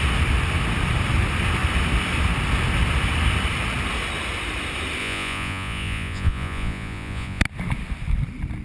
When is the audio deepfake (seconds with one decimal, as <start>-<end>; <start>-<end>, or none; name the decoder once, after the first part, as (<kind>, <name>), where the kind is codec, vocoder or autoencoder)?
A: 5.0-7.4 (vocoder, Vocos)